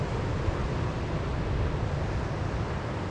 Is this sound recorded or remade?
recorded